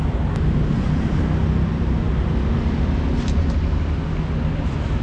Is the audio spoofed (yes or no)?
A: no